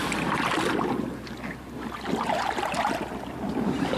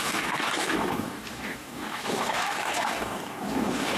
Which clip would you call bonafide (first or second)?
first